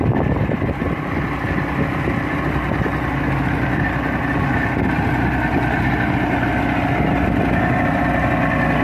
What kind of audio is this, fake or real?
real